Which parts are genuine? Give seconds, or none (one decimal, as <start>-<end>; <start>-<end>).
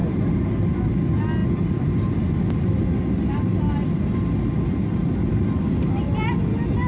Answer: 0.0-6.9